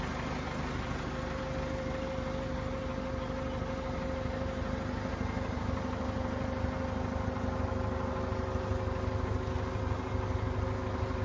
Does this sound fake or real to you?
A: real